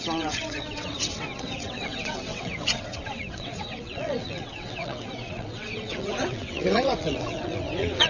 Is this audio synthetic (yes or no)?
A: yes